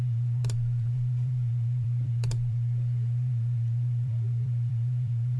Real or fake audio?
fake